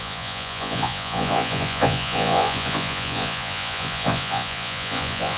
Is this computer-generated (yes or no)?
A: yes